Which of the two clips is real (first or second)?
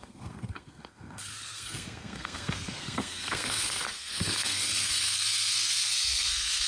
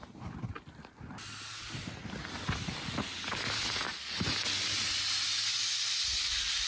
second